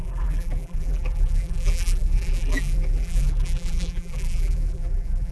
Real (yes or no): no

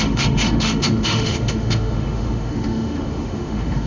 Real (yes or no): no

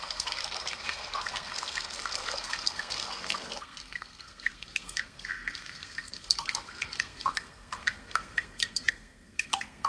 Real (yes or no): no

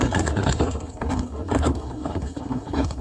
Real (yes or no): no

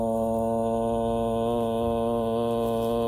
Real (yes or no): yes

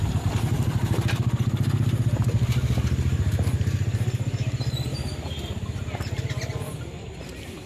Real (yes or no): yes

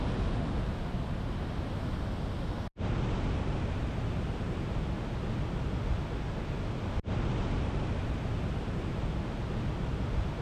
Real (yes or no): yes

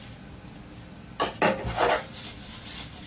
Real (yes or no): yes